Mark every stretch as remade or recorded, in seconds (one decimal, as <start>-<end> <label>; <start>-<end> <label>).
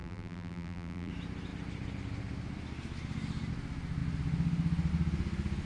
0.0-1.1 remade; 1.1-5.7 recorded